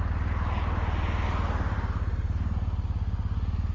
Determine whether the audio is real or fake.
real